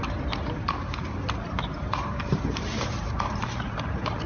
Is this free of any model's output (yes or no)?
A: no